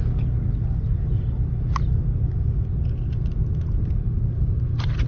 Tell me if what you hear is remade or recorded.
recorded